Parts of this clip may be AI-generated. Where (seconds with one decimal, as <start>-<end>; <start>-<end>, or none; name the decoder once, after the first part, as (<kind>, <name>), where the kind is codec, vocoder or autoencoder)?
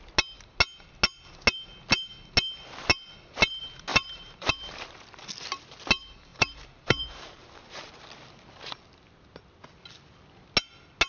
3.9-4.5 (vocoder, BigVGAN v2); 6.3-7.9